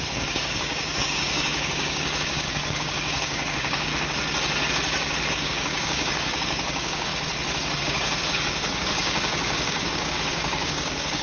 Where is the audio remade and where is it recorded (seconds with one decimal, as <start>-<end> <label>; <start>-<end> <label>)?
0.0-3.9 remade; 3.9-5.3 recorded; 5.3-7.1 remade; 7.1-7.8 recorded; 7.8-11.2 remade